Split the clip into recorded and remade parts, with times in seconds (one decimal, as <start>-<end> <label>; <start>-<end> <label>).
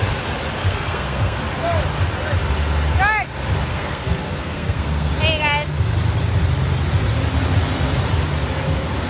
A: 0.0-0.6 recorded; 0.6-1.4 remade; 1.4-3.7 recorded; 3.7-5.1 remade; 5.1-9.1 recorded